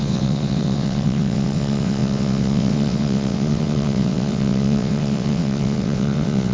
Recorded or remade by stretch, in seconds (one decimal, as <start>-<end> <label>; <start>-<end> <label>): 0.0-6.5 remade